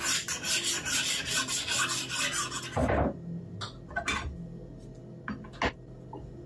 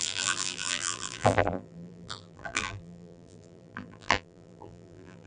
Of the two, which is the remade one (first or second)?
second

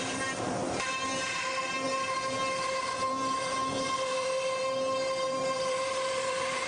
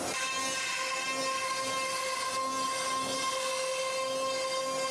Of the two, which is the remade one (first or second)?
first